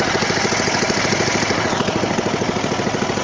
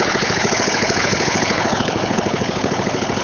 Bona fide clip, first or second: first